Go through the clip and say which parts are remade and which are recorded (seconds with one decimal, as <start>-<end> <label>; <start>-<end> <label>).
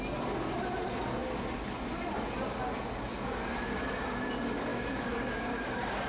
0.0-4.7 recorded; 4.7-6.1 remade